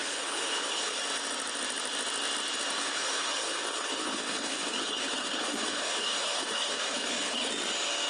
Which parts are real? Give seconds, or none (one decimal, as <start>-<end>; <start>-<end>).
1.0-2.8; 7.5-8.1